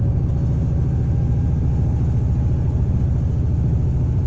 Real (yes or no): yes